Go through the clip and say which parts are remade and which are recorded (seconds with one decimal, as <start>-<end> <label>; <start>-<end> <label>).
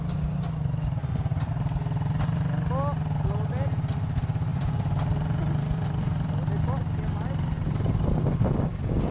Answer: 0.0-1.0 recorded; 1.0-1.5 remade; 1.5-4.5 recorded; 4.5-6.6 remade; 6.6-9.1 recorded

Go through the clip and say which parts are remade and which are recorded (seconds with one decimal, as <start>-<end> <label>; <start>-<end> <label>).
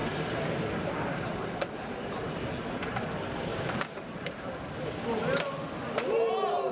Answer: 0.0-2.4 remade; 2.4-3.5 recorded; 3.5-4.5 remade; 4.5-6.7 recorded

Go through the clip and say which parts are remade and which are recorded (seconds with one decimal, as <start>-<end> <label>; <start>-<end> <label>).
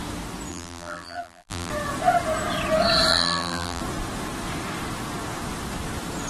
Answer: 0.0-0.5 recorded; 0.5-1.7 remade; 1.7-3.1 recorded; 3.1-3.8 remade; 3.8-6.3 recorded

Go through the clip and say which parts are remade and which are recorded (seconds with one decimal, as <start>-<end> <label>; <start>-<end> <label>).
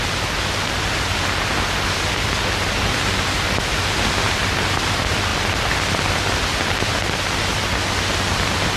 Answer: 0.0-8.8 recorded